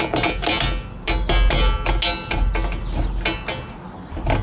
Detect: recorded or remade recorded